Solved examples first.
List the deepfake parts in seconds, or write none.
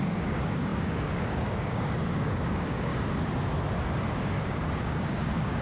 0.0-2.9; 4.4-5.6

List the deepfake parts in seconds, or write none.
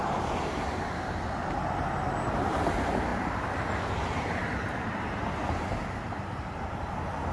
0.0-7.3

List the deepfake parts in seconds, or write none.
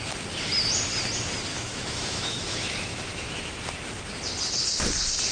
1.5-3.5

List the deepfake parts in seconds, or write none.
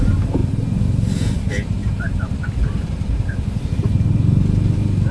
1.8-3.9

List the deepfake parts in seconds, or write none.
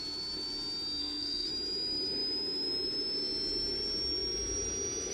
1.0-1.5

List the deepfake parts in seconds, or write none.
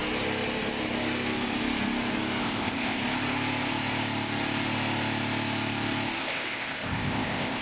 2.4-3.0; 6.2-7.6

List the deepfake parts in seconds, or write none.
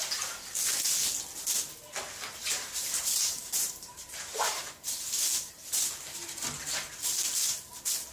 2.4-4.6